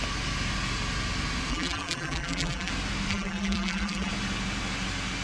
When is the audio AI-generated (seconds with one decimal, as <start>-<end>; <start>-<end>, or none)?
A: 1.5-2.7; 3.1-4.1